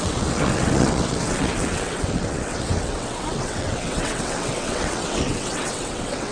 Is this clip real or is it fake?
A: fake